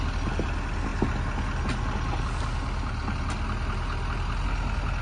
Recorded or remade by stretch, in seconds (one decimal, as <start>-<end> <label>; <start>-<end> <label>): 0.0-5.0 recorded